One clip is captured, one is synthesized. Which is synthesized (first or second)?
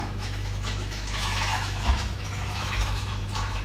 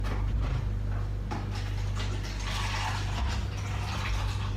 first